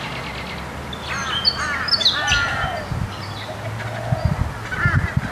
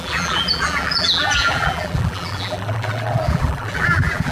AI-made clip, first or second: second